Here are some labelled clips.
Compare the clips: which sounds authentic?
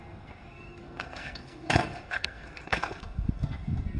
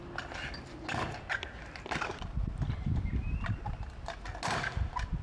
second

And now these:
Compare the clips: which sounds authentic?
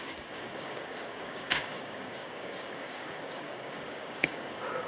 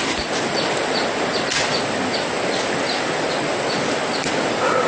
second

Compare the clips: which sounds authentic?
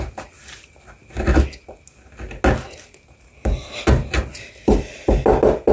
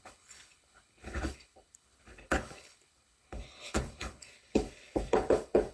first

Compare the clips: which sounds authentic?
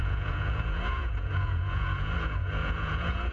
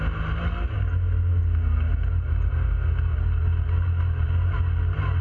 second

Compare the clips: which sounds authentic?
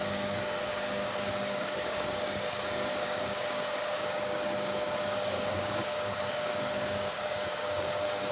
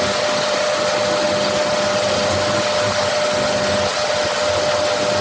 second